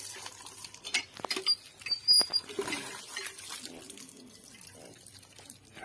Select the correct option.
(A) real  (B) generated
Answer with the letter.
A